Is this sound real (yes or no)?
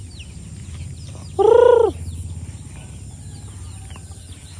yes